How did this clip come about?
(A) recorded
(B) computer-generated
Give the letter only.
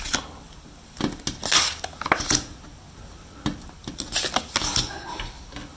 A